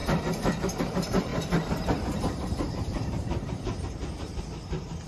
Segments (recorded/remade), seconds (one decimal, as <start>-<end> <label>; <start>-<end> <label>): 0.0-5.1 remade

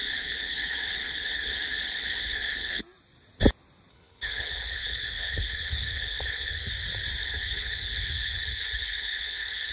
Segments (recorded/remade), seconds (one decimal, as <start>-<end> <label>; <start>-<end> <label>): 0.0-2.8 remade; 2.8-3.9 recorded; 3.9-6.7 remade; 6.7-7.2 recorded; 7.2-9.7 remade